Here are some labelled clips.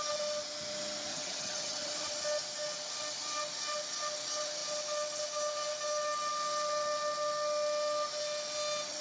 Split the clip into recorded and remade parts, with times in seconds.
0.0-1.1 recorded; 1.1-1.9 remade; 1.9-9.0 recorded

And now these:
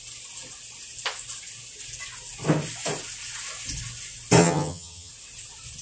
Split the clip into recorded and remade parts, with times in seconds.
0.0-4.4 recorded; 4.4-5.1 remade; 5.1-5.8 recorded